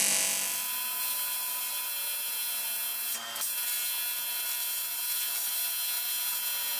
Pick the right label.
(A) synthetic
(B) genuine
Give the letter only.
B